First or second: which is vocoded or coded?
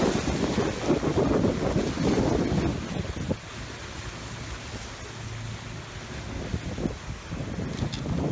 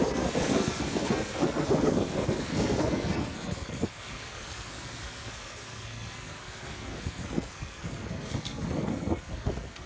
second